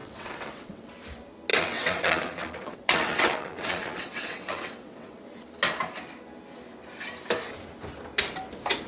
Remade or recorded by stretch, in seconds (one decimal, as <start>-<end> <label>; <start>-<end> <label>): 0.0-0.9 remade; 0.9-1.5 recorded; 1.5-5.2 remade; 5.2-8.9 recorded

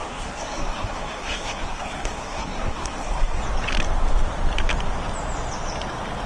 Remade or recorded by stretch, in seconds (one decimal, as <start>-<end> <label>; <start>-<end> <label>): 0.0-3.4 remade; 3.4-6.3 recorded

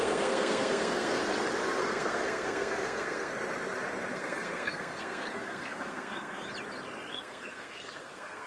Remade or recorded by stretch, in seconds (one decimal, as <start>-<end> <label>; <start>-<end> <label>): 0.0-1.2 remade; 1.2-1.8 recorded; 1.8-3.3 remade; 3.3-4.1 recorded; 4.1-6.4 remade; 6.4-7.1 recorded; 7.1-8.5 remade

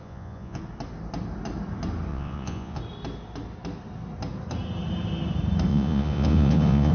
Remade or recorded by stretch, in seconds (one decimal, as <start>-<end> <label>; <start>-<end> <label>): 0.0-0.6 remade; 0.6-2.1 recorded; 2.1-2.8 remade; 2.8-5.7 recorded; 5.7-6.9 remade

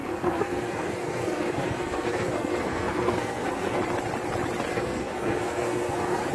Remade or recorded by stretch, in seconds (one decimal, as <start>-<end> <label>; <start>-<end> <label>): 0.0-3.8 remade; 3.8-4.7 recorded; 4.7-6.3 remade

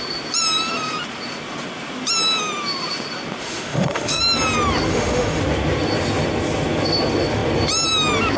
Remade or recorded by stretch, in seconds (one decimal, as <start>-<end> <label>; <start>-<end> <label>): 0.0-3.4 recorded; 3.4-4.2 remade; 4.2-4.9 recorded; 4.9-5.4 remade; 5.4-8.4 recorded

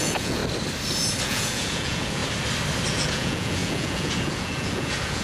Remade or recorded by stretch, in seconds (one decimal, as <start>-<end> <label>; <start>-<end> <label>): 0.0-0.4 remade; 0.4-1.2 recorded; 1.2-2.2 remade; 2.2-2.9 recorded; 2.9-5.2 remade